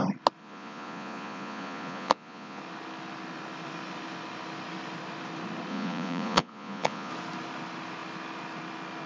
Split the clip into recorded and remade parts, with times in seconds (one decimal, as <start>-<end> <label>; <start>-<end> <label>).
0.0-0.4 recorded; 0.4-2.6 remade; 2.6-5.7 recorded; 5.7-7.1 remade; 7.1-9.1 recorded